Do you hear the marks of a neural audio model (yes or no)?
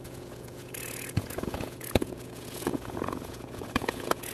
yes